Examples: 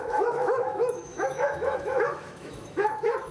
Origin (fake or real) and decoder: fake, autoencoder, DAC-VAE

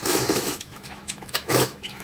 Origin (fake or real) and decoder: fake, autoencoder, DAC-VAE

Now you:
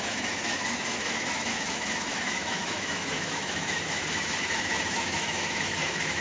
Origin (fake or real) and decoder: fake, autoencoder, DAC-VAE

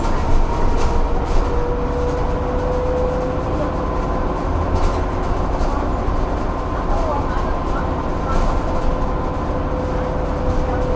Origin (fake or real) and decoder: real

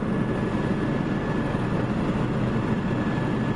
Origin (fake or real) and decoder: real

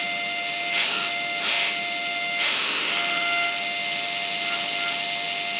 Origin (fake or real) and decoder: fake, autoencoder, DAC-VAE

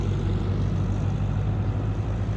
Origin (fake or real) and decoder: real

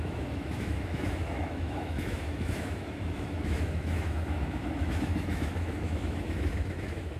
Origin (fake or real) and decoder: fake, autoencoder, DAC-VAE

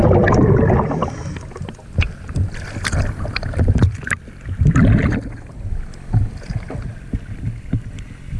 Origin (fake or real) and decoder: real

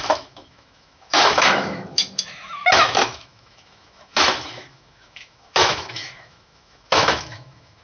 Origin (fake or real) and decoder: fake, autoencoder, DAC-VAE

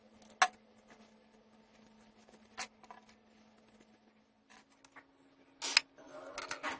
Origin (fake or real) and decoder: real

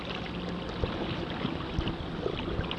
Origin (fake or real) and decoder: real